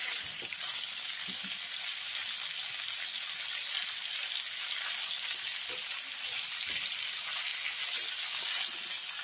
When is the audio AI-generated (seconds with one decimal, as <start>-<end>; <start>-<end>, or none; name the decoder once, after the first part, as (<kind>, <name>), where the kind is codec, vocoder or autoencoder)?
none